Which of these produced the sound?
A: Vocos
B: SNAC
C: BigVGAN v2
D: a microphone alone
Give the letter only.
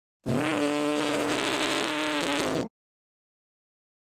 D